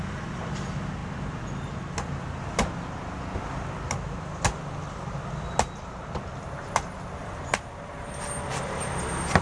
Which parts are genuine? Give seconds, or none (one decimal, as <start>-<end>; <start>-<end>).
0.0-7.2; 7.8-9.4